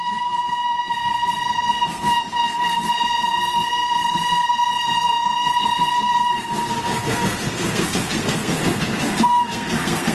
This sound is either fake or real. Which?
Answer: fake